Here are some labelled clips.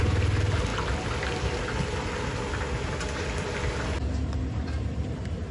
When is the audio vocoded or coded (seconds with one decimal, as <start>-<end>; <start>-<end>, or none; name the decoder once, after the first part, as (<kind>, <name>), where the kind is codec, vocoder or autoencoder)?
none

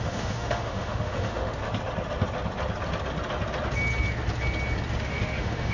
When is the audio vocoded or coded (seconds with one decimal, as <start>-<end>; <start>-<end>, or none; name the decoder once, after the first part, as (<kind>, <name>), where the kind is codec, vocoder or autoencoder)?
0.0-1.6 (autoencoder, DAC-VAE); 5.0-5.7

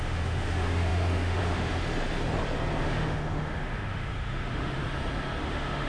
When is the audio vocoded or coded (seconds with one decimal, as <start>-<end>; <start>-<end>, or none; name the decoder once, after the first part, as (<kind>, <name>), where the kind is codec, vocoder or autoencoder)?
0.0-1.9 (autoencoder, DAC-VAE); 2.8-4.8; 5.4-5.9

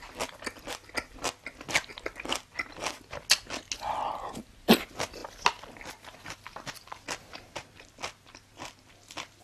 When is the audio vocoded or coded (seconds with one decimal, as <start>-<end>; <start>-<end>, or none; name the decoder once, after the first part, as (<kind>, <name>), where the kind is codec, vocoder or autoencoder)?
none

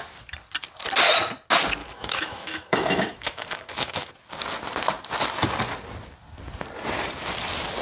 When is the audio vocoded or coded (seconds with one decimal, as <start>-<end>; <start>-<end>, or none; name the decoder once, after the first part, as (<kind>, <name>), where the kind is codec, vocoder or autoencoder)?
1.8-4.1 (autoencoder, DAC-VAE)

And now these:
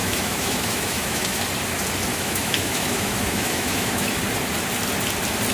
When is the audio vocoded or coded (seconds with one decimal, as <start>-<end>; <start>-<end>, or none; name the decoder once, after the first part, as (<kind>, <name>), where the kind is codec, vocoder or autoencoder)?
0.0-1.4 (autoencoder, DAC-VAE); 2.1-4.2

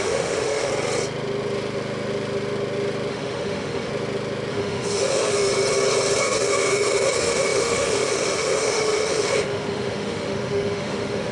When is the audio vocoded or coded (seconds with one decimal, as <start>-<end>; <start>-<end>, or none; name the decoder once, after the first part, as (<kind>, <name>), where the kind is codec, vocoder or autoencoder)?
0.0-0.7 (autoencoder, DAC-VAE); 3.1-3.9; 4.5-5.5; 6.2-11.3

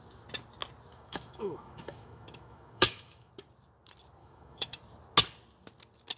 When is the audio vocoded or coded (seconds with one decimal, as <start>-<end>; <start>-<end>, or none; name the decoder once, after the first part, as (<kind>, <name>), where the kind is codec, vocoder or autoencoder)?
0.9-3.3 (autoencoder, DAC-VAE); 4.2-4.8